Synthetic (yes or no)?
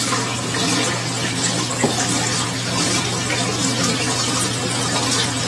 no